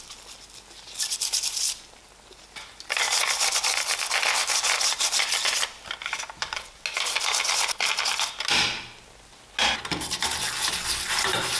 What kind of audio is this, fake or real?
real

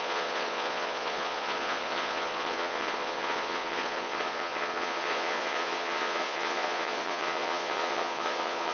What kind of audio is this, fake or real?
fake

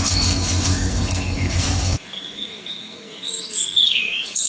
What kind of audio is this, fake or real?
fake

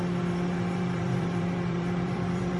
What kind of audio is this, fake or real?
fake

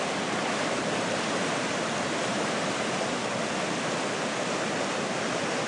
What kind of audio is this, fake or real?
real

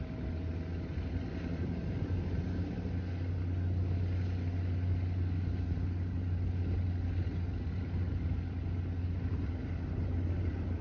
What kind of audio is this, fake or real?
real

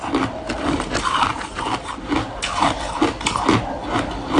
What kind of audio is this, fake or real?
real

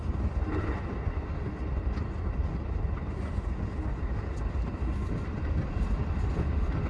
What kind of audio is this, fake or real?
real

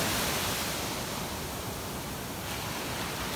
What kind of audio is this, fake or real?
fake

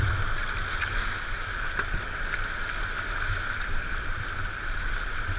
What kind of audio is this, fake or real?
real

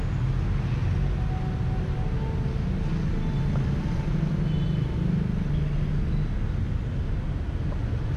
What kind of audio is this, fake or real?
real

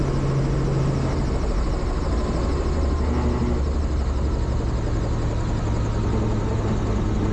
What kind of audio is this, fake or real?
real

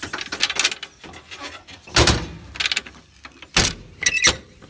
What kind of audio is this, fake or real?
real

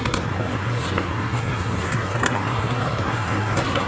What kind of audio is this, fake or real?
fake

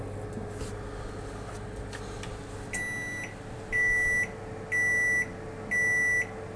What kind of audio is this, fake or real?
real